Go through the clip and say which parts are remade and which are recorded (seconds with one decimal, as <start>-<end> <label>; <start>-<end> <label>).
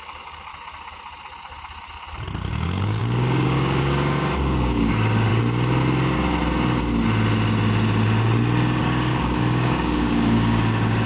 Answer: 0.0-0.5 remade; 0.5-2.5 recorded; 2.5-5.3 remade; 5.3-8.8 recorded; 8.8-11.1 remade